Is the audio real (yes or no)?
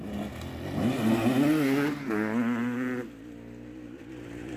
yes